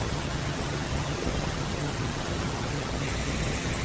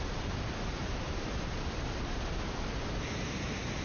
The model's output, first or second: first